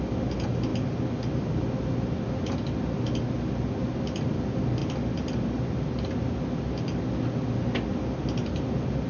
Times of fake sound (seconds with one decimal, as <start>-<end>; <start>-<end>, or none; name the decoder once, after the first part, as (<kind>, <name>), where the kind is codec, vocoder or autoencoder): none